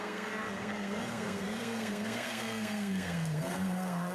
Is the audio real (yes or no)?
no